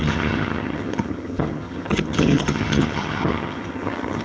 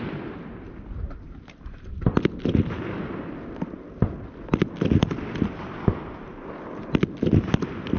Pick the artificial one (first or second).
first